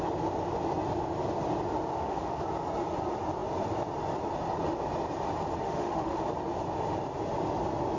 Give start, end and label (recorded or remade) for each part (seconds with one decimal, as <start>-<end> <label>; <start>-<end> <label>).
0.0-1.9 recorded; 1.9-2.4 remade; 2.4-5.6 recorded; 5.6-6.2 remade; 6.2-8.0 recorded